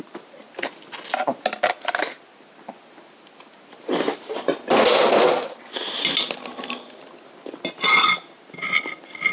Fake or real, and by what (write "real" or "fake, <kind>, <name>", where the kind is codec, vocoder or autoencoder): real